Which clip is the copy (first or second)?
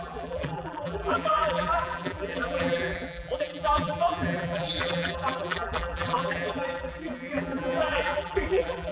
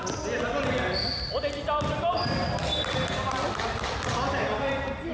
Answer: first